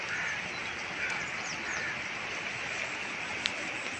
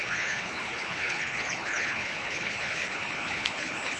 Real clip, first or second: first